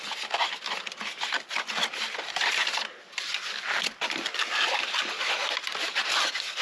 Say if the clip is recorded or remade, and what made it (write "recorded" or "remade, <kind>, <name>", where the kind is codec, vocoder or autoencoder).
recorded